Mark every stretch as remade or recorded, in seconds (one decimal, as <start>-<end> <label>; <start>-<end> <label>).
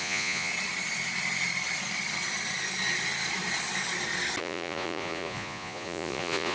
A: 0.0-0.5 remade; 0.5-4.4 recorded; 4.4-6.5 remade